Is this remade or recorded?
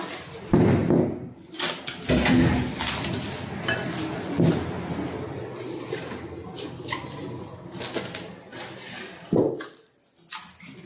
recorded